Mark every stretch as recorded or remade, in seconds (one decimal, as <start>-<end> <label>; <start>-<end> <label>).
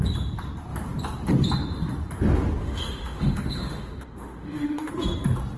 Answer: 0.0-2.6 recorded; 2.6-4.9 remade; 4.9-5.6 recorded